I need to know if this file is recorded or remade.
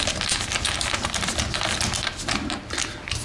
recorded